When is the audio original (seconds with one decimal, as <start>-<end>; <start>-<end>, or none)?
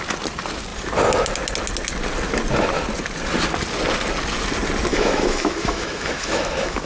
0.0-4.9